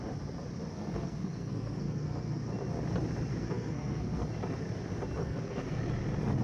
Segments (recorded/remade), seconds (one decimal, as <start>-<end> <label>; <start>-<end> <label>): 0.0-0.7 recorded; 0.7-2.4 remade; 2.4-3.3 recorded; 3.3-4.3 remade; 4.3-5.2 recorded; 5.2-5.8 remade; 5.8-6.4 recorded